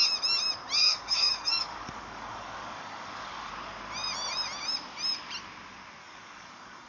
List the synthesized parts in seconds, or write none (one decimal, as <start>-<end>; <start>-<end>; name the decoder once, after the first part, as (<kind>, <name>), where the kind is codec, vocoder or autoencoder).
0.8-3.5 (codec, DAC); 6.0-6.9